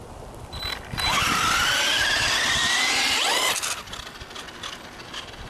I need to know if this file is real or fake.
real